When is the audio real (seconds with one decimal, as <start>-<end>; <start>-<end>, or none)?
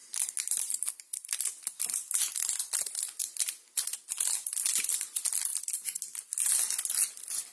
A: 0.0-7.5